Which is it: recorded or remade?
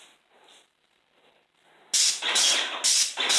recorded